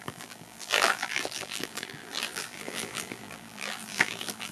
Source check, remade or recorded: remade